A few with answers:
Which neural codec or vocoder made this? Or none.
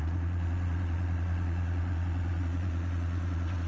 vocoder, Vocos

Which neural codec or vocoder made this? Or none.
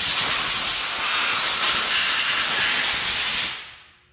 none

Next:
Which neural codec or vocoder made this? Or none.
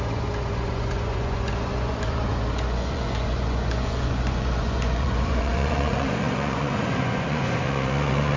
vocoder, Vocos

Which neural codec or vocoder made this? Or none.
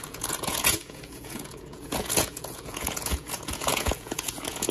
vocoder, Vocos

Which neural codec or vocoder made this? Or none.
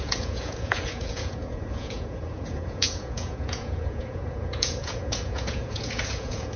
vocoder, Vocos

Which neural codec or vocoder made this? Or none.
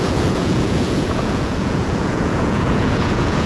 vocoder, Vocos